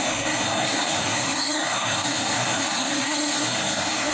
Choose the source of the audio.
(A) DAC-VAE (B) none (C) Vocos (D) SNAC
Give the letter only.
D